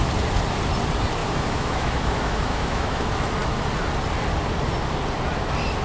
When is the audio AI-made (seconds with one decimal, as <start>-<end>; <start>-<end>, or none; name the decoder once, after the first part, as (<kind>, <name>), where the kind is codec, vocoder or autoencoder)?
1.2-3.0 (autoencoder, DAC-VAE)